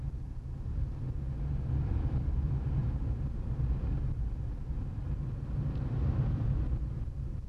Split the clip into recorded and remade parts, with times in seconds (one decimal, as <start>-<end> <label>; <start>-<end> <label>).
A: 0.0-7.5 recorded